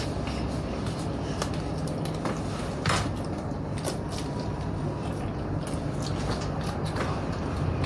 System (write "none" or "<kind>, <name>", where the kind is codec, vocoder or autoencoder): none